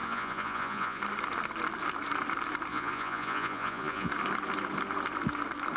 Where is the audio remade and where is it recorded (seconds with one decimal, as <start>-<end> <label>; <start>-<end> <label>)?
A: 0.0-1.0 remade; 1.0-2.7 recorded; 2.7-4.1 remade; 4.1-5.8 recorded